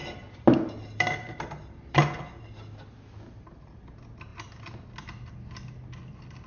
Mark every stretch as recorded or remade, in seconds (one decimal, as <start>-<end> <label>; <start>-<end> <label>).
0.0-3.9 remade; 3.9-6.5 recorded

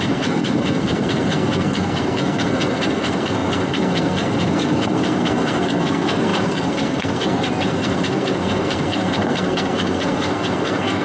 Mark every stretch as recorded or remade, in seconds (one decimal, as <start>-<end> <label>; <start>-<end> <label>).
0.0-11.0 remade

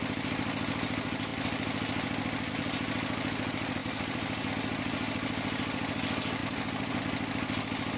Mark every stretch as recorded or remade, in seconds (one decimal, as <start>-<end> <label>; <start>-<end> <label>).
0.0-3.8 recorded; 3.8-4.5 remade; 4.5-6.4 recorded; 6.4-7.0 remade; 7.0-8.0 recorded